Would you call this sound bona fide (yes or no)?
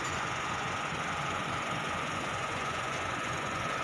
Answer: no